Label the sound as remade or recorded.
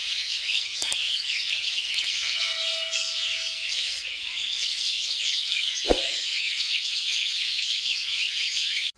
remade